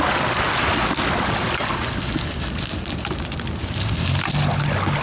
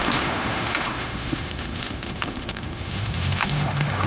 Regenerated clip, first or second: second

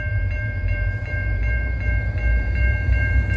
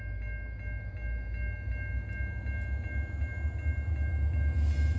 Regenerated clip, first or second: first